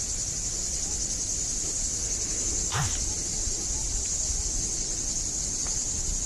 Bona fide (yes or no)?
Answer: yes